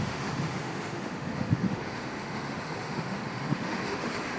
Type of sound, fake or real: fake